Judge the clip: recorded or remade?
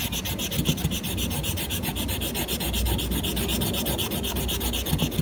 recorded